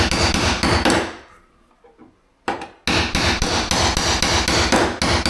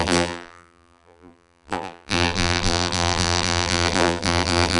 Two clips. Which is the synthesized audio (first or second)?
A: second